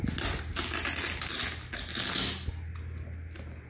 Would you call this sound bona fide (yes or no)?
yes